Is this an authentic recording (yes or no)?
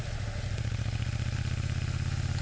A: yes